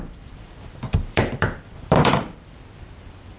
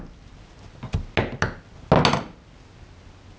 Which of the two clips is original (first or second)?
second